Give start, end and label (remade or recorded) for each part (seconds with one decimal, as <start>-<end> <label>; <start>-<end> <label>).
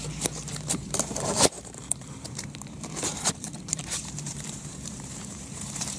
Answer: 0.0-6.0 remade